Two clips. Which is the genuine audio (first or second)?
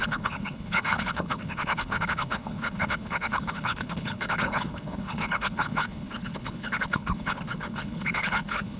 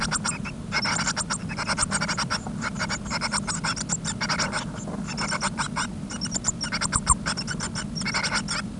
second